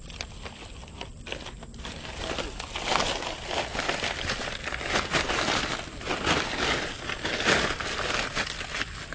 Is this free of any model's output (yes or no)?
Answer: yes